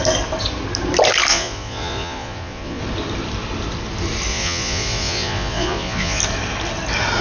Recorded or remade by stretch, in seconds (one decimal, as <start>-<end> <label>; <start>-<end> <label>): 0.0-1.3 recorded; 1.3-2.8 remade; 2.8-4.3 recorded; 4.3-6.2 remade; 6.2-7.2 recorded